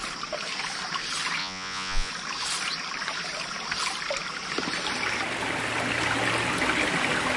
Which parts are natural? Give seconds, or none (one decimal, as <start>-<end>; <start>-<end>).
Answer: 0.0-1.4; 2.1-7.4